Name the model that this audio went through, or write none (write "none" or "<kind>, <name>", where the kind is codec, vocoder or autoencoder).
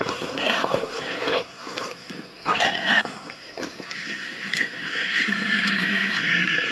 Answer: codec, SNAC